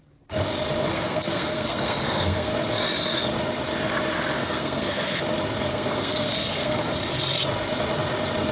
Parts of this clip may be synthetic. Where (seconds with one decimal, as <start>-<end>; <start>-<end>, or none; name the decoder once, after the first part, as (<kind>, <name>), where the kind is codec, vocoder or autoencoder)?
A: 0.9-2.5 (codec, SNAC); 4.4-5.2; 5.7-6.9